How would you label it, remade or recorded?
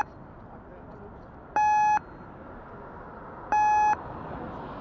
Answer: recorded